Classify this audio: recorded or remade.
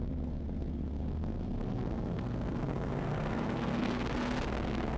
remade